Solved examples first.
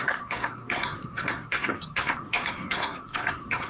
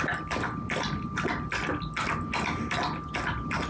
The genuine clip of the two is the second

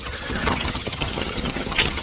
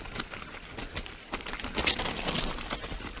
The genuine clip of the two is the second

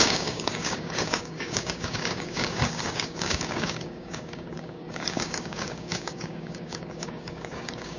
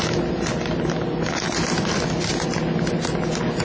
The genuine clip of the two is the second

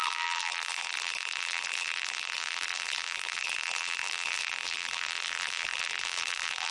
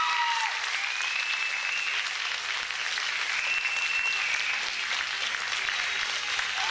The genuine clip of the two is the second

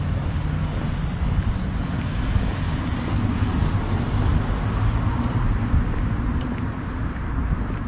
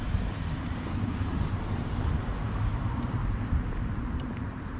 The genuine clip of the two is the first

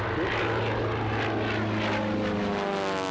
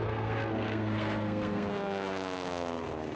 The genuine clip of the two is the first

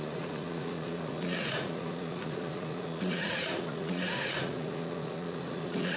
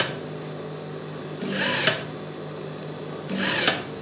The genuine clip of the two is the second